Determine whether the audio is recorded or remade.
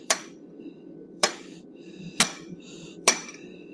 remade